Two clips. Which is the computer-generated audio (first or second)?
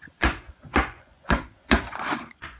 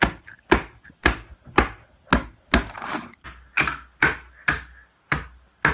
first